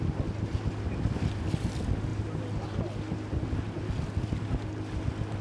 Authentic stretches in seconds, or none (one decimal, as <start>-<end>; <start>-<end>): 0.0-5.4